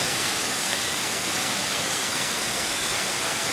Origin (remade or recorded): remade